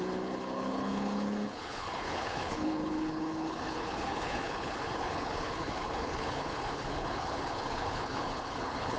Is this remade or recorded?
remade